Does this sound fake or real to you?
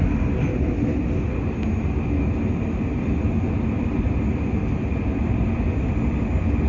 real